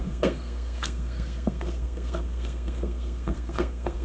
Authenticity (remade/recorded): remade